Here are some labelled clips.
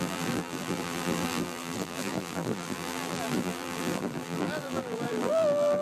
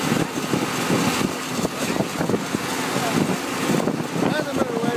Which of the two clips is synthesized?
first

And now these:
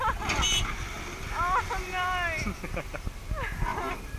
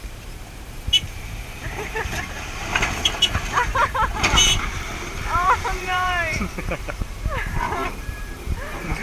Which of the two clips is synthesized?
second